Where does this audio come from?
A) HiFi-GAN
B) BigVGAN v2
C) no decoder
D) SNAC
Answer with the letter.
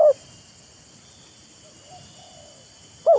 C